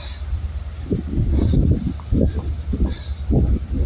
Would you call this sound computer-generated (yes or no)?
no